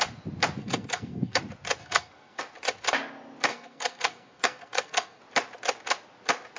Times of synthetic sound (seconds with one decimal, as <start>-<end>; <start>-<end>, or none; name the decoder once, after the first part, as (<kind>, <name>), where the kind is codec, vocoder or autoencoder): 0.6-1.4 (codec, SNAC); 1.8-2.4; 3.5-5.2